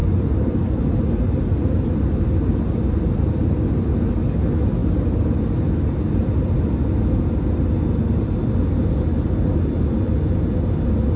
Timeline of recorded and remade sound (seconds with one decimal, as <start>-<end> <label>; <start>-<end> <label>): 0.0-11.2 recorded